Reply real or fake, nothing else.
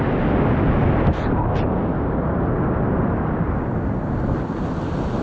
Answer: real